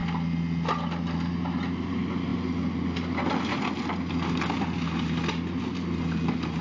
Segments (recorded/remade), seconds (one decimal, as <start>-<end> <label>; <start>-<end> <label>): 0.0-6.6 recorded